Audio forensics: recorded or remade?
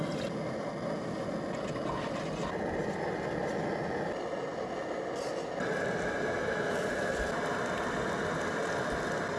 recorded